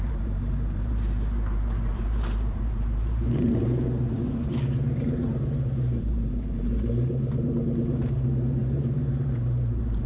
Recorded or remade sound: remade